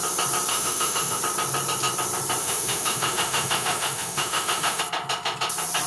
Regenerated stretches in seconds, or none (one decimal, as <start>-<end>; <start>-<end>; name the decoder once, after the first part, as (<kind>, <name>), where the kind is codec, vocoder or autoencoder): 0.5-1.2 (autoencoder, DAC-VAE); 2.4-4.8